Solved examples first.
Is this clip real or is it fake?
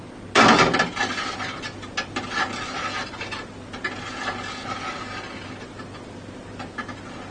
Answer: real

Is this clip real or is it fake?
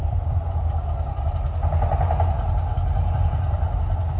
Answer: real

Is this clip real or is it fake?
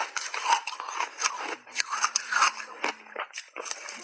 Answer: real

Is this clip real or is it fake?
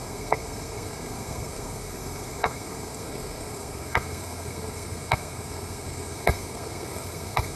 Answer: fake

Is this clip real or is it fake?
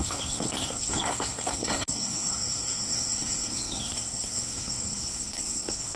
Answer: fake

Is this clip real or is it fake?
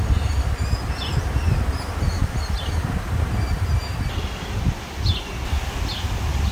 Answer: real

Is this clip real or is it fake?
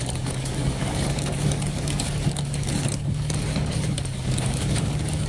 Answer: fake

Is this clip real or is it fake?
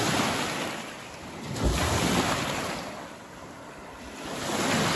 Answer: real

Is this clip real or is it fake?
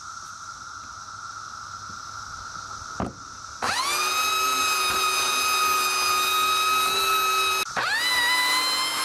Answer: real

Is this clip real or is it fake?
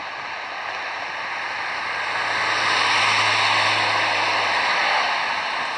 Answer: real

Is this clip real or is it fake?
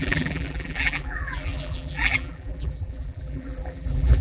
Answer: fake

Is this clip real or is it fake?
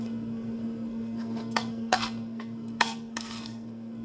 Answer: fake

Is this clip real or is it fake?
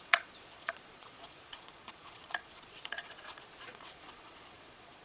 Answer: fake